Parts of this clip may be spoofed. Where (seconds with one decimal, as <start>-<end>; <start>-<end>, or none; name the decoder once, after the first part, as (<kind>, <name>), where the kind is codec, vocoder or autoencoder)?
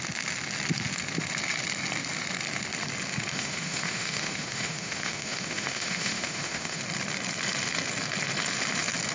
3.3-6.8 (autoencoder, DAC-VAE)